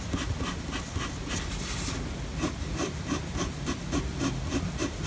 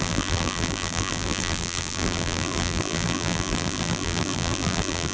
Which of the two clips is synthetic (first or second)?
second